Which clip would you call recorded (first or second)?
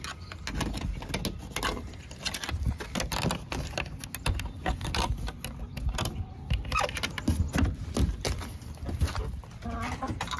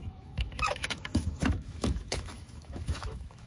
first